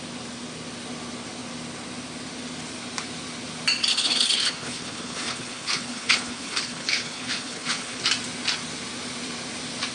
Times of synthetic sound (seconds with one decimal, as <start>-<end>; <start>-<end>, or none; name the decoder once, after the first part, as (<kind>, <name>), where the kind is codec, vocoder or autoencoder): 3.9-8.0 (codec, HILCodec)